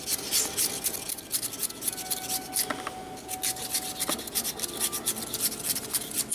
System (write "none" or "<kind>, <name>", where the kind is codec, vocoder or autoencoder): none